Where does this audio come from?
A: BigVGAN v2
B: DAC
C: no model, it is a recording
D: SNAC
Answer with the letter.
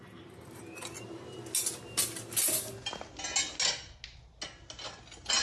C